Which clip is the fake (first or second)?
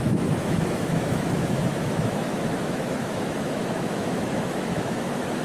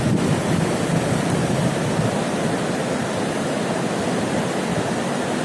first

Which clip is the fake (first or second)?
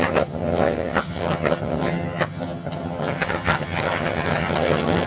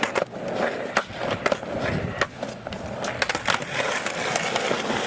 first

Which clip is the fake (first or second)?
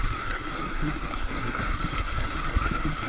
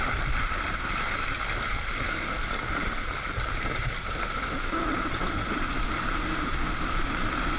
first